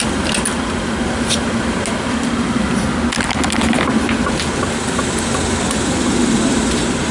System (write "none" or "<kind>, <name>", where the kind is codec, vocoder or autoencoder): none